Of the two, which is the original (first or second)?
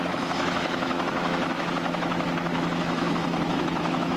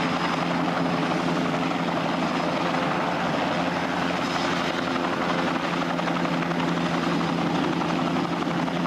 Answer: second